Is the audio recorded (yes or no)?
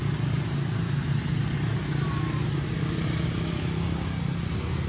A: yes